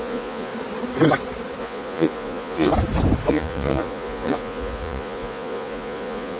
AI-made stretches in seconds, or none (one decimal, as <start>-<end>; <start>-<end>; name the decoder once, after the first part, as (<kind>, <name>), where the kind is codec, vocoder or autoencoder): 0.0-0.5 (vocoder, Vocos); 1.6-2.7; 3.3-6.4